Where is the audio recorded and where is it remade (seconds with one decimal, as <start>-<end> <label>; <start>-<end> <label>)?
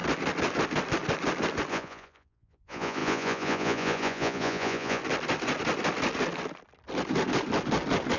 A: 0.0-1.7 recorded; 1.7-5.0 remade; 5.0-8.2 recorded